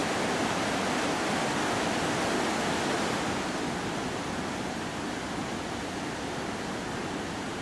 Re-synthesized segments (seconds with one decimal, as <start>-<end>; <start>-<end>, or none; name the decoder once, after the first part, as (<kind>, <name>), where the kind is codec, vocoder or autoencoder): none